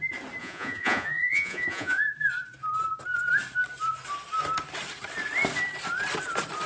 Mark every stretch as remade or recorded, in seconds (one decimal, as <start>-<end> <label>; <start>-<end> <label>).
0.0-0.4 recorded; 0.4-2.0 remade; 2.0-6.7 recorded